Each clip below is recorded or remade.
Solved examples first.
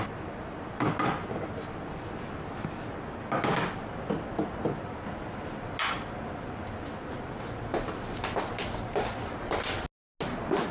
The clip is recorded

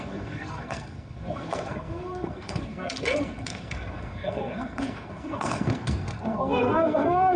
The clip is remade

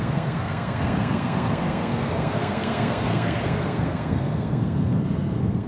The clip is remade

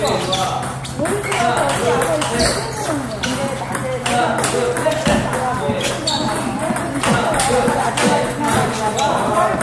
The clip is recorded